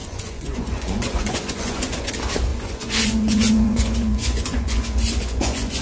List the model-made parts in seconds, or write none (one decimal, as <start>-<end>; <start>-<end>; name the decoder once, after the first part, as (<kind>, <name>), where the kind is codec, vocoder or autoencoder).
0.0-2.1 (vocoder, Vocos); 2.5-5.8